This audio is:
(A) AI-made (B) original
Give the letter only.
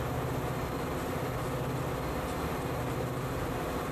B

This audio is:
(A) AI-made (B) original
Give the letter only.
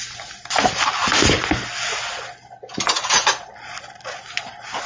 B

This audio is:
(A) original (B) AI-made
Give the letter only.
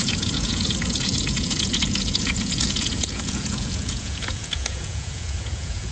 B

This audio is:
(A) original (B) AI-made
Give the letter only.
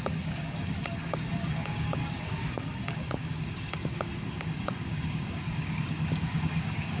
B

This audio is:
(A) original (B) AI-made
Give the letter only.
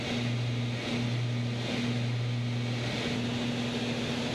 A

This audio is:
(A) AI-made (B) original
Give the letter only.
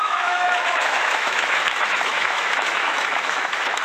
A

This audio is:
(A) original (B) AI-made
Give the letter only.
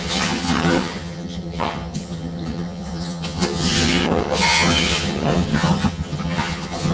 B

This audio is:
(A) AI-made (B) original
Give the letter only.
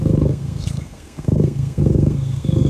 A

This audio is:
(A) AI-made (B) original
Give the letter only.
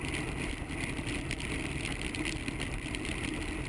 B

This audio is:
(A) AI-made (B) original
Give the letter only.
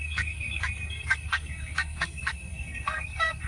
A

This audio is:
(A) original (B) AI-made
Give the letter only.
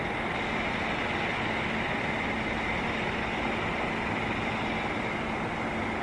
A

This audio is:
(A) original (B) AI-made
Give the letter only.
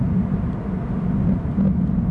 A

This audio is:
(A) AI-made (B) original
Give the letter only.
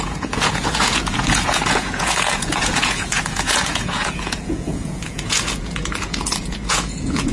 A